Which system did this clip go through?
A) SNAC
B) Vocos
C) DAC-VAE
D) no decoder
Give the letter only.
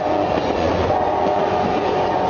B